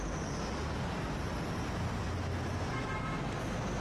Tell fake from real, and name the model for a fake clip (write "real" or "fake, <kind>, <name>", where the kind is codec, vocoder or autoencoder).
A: real